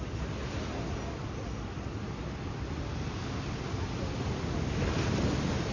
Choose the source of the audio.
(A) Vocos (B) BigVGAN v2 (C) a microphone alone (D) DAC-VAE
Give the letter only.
C